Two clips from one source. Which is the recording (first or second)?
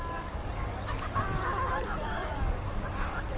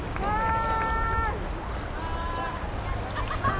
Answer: second